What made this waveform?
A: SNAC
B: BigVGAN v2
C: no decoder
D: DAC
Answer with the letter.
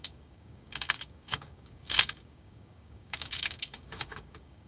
D